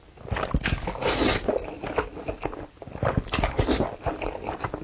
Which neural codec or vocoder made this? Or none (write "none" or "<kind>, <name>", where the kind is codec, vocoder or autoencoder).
none